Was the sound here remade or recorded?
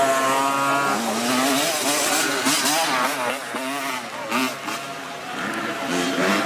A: recorded